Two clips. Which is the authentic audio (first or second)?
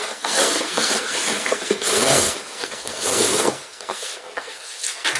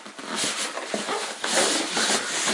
second